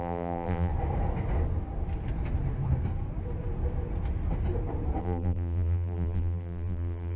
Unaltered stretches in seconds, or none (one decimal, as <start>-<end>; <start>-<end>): 0.7-5.0